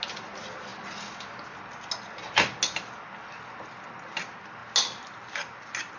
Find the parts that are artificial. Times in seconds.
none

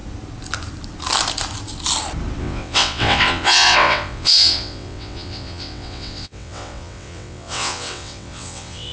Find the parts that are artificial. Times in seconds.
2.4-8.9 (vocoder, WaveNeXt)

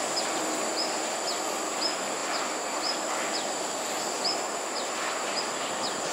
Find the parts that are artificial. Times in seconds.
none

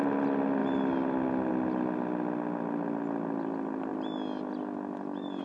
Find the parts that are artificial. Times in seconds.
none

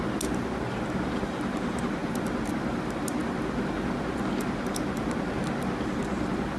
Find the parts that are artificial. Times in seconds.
none

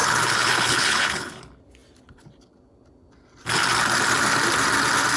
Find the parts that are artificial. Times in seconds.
0.0-1.4 (codec, HILCodec)